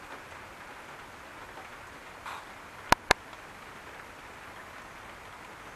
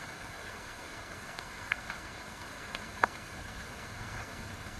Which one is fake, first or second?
second